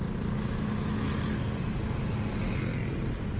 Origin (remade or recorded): recorded